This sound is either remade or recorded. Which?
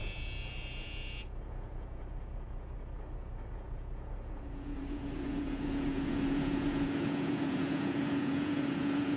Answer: remade